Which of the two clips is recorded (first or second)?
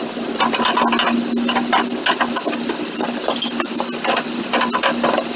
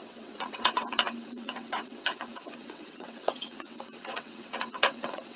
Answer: first